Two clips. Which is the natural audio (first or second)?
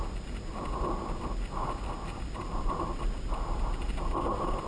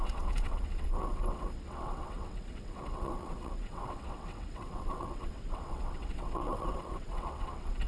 first